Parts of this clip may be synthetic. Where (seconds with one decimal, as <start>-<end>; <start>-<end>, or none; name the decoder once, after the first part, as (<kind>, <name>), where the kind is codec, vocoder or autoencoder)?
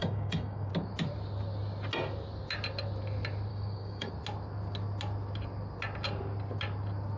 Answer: 0.0-0.7 (codec, DAC); 3.5-4.1